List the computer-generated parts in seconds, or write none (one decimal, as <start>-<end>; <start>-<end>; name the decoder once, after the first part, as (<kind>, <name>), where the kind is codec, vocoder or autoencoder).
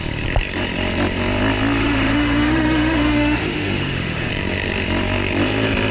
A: 1.8-4.3 (autoencoder, DAC-VAE)